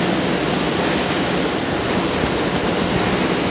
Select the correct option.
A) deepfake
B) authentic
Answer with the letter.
B